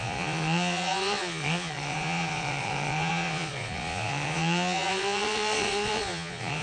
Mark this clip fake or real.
fake